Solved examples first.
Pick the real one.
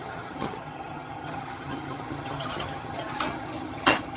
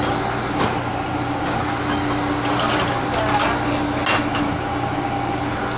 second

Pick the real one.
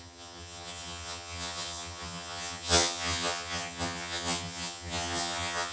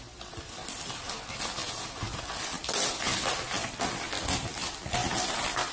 second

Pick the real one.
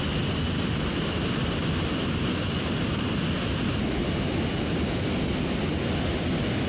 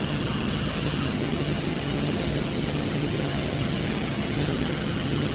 first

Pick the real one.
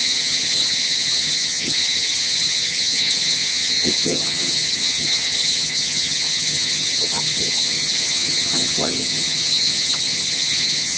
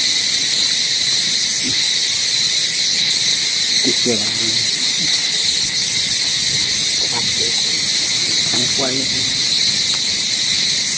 second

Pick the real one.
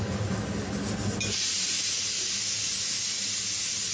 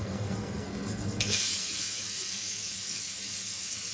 first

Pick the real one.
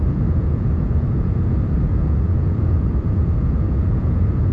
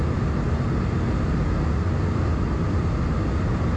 second